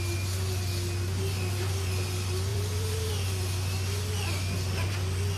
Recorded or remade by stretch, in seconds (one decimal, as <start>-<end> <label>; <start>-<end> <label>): 0.0-2.5 recorded; 2.5-3.1 remade; 3.1-5.4 recorded